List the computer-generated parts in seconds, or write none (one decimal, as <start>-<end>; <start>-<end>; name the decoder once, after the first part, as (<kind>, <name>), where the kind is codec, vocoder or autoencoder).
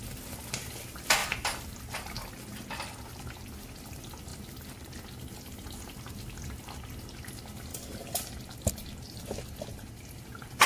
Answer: 7.7-8.5 (vocoder, BigVGAN v2)